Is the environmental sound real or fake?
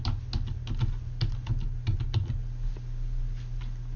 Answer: real